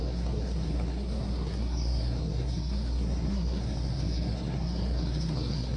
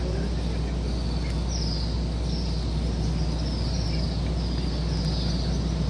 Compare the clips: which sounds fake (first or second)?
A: first